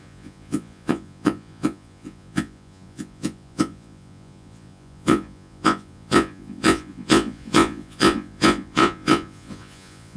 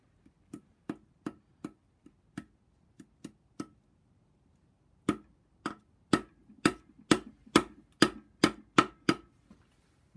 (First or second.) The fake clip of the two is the first